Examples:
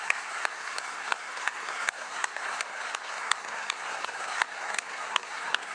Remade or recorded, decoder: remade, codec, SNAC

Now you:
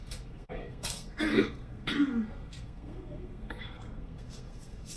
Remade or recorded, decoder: remade, codec, SNAC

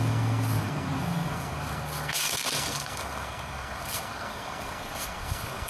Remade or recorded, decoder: remade, codec, SNAC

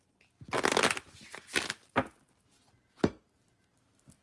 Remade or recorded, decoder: recorded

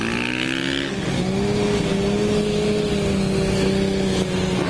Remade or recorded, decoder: recorded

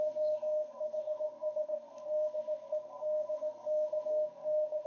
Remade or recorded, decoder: remade, codec, SNAC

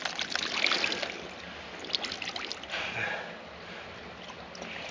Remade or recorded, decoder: recorded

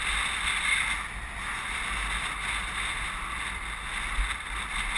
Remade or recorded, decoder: recorded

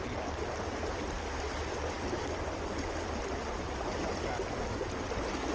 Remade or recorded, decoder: recorded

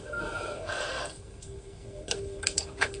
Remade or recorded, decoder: remade, codec, SNAC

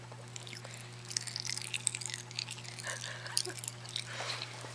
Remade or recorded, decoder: recorded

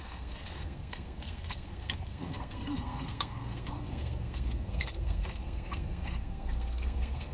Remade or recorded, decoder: remade, codec, SNAC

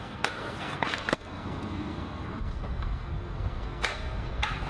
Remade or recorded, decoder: remade, codec, SNAC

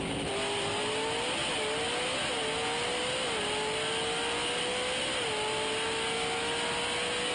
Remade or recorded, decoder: recorded